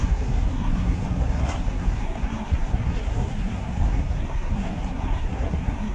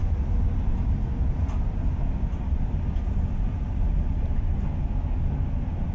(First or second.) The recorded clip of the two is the second